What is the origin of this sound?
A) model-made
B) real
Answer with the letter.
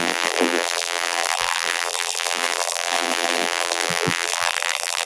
A